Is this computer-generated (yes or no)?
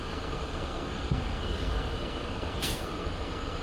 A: yes